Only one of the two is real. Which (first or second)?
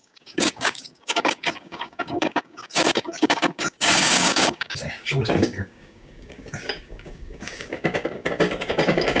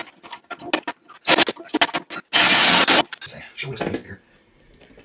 second